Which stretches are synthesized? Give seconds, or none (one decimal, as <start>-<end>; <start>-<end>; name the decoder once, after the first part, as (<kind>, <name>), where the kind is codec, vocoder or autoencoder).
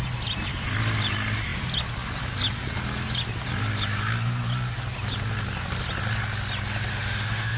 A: 6.9-7.6 (autoencoder, DAC-VAE)